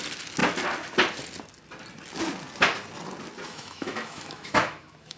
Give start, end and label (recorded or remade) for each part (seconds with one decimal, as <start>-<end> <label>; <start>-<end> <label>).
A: 0.0-3.5 recorded; 3.5-5.2 remade